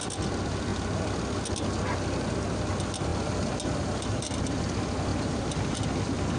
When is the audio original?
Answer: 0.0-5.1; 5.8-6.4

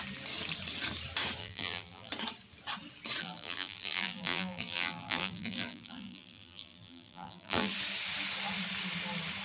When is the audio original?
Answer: 0.0-1.4; 2.1-3.2; 7.7-9.4

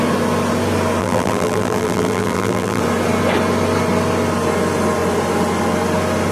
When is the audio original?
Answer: 0.0-1.0; 2.8-6.3

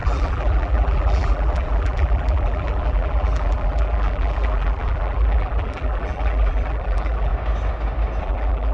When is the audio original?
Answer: 7.3-8.2